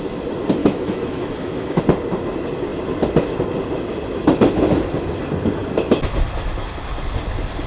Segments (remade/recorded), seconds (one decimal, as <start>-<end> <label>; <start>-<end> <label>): 0.0-0.6 recorded; 0.6-1.8 remade; 1.8-7.7 recorded